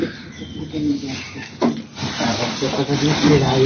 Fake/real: real